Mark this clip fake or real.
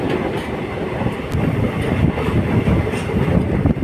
real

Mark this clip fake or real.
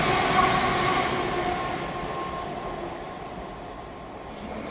real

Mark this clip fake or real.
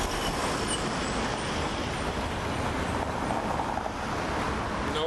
real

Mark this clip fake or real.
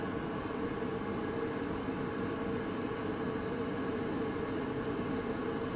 real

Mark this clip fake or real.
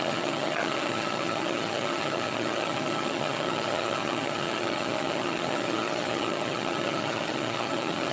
fake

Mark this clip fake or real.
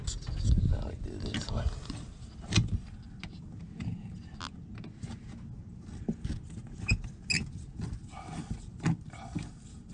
real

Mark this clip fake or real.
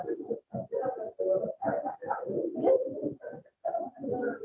real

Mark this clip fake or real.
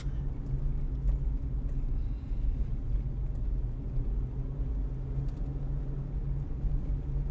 real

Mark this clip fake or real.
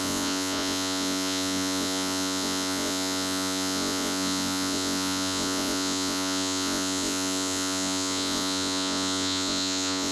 fake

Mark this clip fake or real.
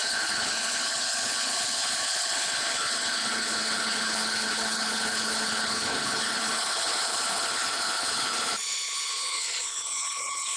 fake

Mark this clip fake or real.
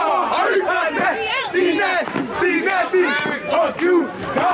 real